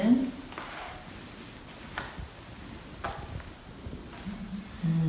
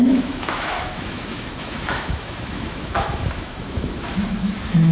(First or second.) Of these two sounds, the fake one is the second